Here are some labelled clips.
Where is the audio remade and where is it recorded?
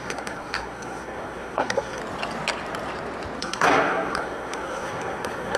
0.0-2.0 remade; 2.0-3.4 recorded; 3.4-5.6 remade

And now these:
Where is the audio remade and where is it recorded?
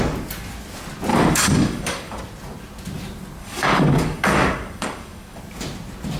0.0-1.1 recorded; 1.1-2.2 remade; 2.2-3.4 recorded; 3.4-5.4 remade; 5.4-6.2 recorded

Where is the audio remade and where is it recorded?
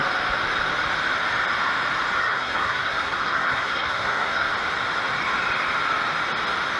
0.0-2.2 recorded; 2.2-4.5 remade; 4.5-6.8 recorded